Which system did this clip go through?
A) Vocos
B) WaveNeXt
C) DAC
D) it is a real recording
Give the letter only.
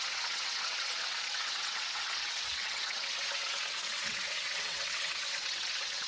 B